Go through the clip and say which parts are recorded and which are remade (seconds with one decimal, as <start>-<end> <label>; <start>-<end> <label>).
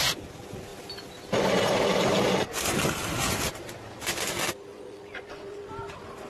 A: 0.0-4.7 recorded; 4.7-5.7 remade; 5.7-6.3 recorded